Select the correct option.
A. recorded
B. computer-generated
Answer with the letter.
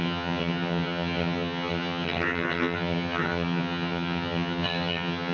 B